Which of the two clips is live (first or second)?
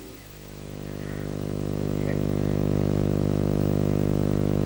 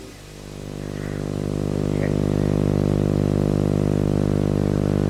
second